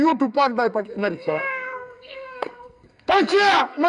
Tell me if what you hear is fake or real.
fake